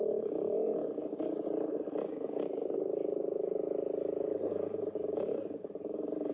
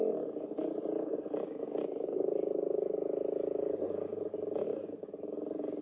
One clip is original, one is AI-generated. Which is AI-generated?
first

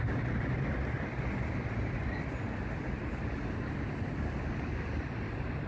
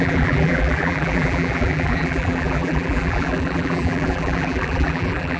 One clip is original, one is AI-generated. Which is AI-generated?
second